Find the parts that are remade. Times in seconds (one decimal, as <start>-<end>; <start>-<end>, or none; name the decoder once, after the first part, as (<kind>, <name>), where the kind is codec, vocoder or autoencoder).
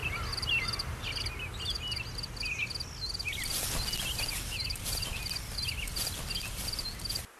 none